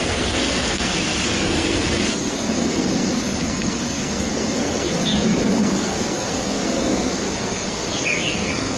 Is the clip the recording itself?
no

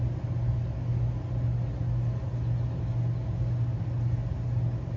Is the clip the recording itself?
yes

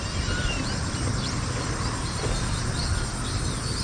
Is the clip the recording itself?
yes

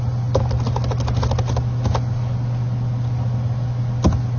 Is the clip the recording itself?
yes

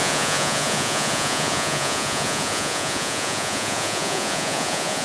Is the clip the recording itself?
no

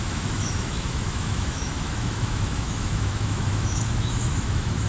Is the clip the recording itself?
no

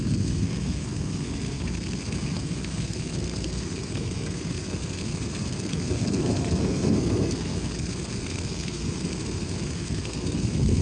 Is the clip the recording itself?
no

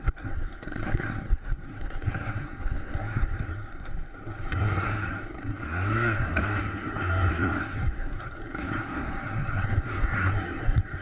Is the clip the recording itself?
no